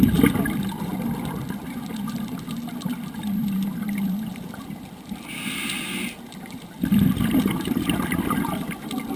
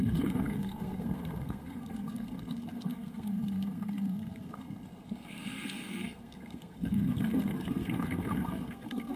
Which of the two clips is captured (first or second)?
first